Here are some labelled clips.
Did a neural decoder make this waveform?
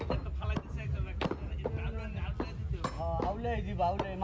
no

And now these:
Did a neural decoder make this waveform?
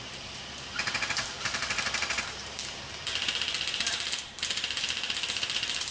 yes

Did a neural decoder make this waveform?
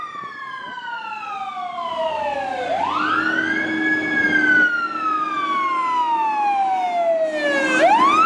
no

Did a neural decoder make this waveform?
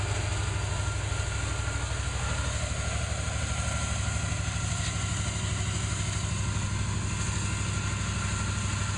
no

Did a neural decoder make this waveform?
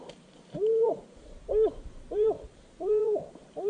yes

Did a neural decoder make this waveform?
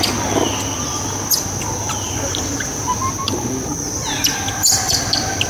no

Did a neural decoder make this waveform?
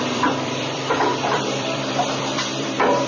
yes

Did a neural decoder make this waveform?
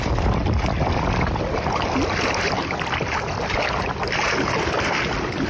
no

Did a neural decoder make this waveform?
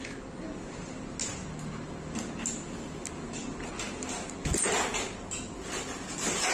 no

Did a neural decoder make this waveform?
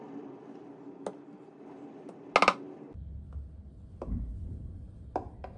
no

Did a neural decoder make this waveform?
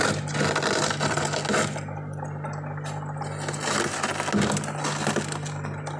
no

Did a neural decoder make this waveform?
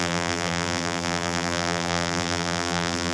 yes